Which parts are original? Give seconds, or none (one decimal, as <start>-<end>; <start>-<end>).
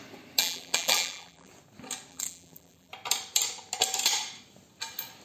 0.0-0.4; 1.5-2.1; 2.9-5.2